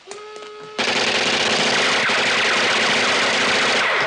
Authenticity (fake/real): real